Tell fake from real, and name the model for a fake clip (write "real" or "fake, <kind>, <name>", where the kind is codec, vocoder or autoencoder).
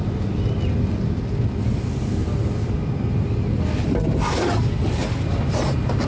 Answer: real